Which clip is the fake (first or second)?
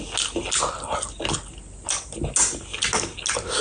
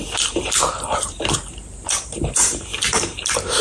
second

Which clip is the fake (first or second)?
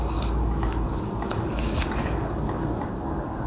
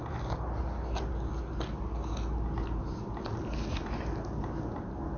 first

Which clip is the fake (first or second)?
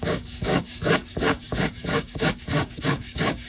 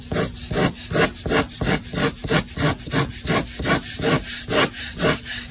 first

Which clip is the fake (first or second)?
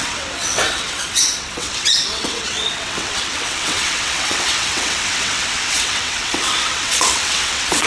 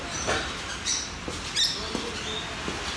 first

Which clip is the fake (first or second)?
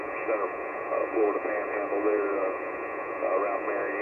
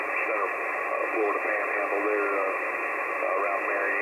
first